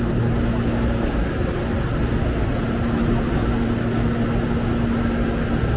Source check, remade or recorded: recorded